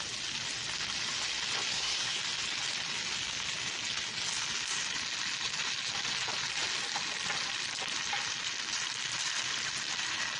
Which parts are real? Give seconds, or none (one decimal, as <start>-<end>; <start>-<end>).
0.0-1.7; 2.2-10.4